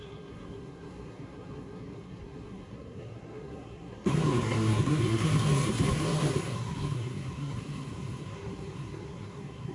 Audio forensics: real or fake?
fake